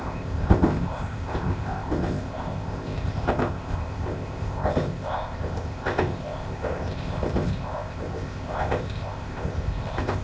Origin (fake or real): fake